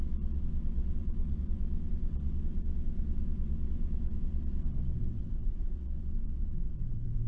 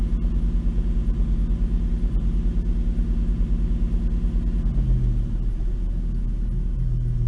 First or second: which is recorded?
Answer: second